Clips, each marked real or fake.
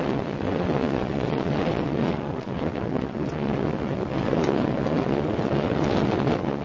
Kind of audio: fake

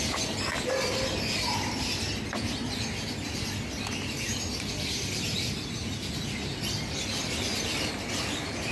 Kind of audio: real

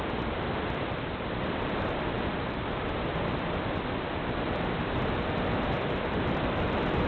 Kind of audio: fake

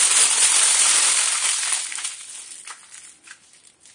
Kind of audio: real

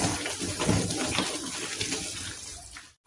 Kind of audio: real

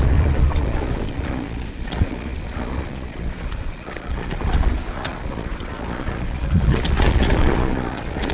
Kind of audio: fake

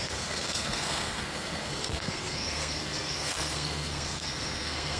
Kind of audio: fake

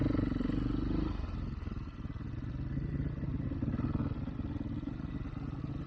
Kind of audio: real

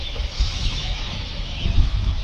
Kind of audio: fake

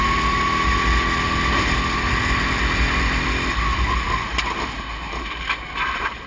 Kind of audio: real